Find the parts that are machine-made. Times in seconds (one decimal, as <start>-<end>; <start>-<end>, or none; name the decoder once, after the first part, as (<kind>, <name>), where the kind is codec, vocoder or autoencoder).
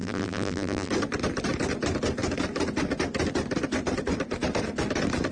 0.0-0.9 (vocoder, BigVGAN v2)